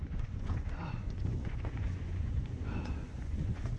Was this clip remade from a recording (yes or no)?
yes